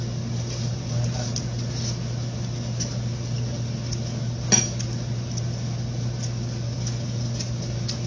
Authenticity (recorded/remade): recorded